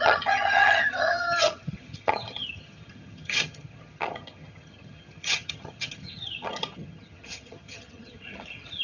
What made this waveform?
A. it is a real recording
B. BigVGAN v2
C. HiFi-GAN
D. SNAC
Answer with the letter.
C